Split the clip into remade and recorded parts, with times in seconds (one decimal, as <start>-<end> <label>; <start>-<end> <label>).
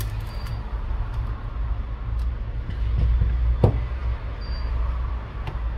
0.0-5.8 recorded